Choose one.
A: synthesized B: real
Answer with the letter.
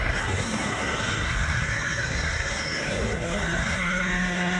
A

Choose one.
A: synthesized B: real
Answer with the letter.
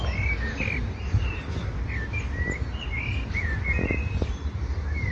B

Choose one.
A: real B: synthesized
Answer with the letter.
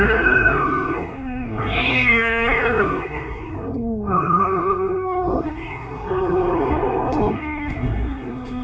B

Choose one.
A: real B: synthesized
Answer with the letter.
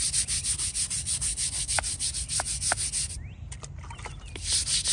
A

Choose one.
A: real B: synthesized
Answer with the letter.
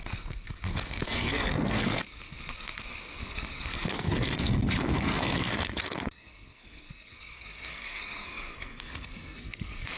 B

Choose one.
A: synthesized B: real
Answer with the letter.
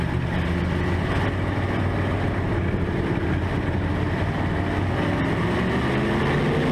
B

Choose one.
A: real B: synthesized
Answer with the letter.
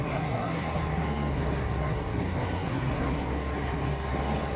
B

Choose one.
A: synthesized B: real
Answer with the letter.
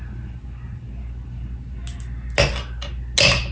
B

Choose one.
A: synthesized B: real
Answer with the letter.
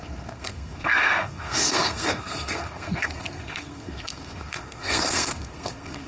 A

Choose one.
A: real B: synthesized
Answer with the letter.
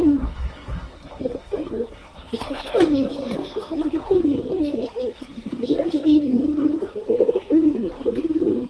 B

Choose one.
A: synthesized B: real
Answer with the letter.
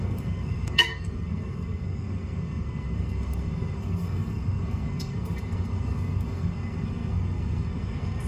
A